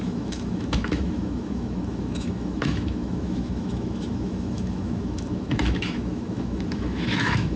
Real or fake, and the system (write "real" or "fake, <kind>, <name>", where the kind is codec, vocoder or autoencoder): fake, autoencoder, DAC-VAE